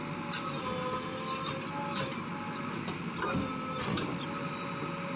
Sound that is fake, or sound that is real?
real